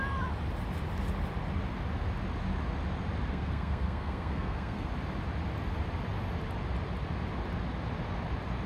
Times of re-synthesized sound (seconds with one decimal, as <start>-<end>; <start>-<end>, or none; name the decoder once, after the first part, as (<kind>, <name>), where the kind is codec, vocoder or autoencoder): 3.3-4.9 (codec, SNAC)